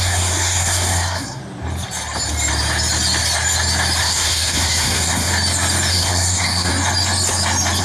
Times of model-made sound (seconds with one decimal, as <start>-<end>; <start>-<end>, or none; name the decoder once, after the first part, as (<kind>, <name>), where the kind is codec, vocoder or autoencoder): 0.0-1.4 (codec, SNAC); 4.0-5.3; 5.9-6.7